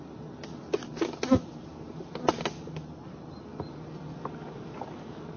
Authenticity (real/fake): real